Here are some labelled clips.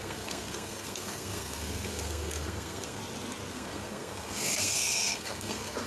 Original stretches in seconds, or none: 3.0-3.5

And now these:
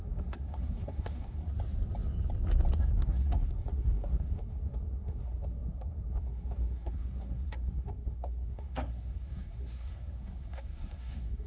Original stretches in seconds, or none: 1.5-2.8

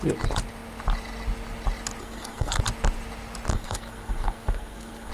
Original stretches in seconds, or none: 0.0-2.0; 2.6-3.5

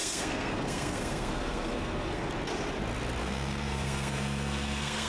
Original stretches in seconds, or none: 2.3-3.2

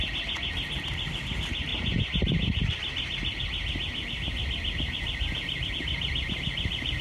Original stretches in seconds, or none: 0.0-7.0